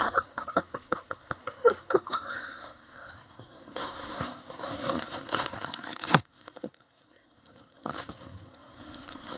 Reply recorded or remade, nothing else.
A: remade